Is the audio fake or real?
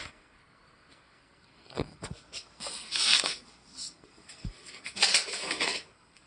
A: fake